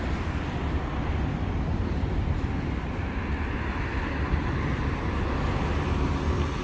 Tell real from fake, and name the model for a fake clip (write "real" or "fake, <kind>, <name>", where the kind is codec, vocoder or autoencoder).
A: real